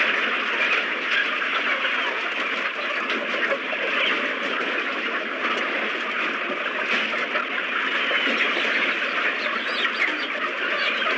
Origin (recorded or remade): recorded